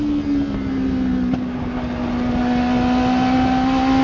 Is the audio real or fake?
real